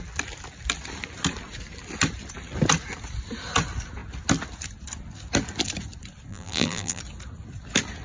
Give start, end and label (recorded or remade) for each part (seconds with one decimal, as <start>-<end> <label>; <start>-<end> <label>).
0.0-6.3 recorded; 6.3-7.0 remade; 7.0-8.0 recorded